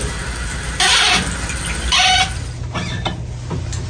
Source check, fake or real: real